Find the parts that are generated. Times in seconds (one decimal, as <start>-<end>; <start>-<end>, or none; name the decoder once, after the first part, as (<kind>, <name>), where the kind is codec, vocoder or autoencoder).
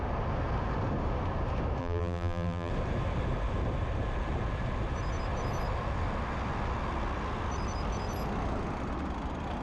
1.8-2.7 (vocoder, BigVGAN v2)